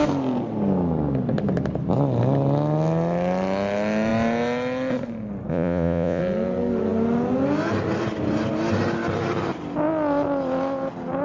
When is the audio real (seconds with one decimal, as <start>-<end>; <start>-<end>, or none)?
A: 0.0-5.5; 6.2-11.2